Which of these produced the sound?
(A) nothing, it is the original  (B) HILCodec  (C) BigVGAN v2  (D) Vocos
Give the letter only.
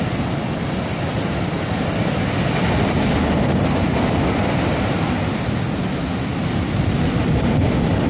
A